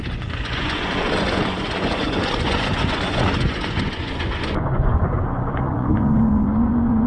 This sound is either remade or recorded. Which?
remade